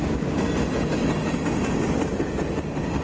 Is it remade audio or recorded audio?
recorded